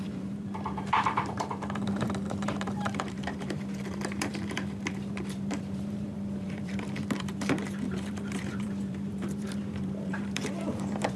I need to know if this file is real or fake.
fake